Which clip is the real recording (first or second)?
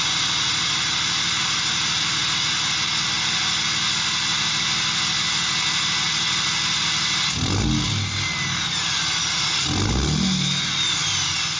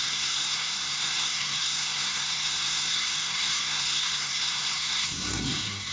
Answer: first